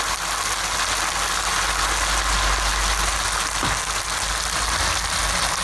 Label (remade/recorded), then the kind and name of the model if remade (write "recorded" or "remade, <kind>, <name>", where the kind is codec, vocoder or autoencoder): recorded